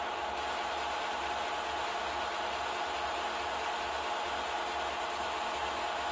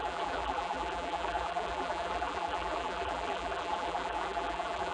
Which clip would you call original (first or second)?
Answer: first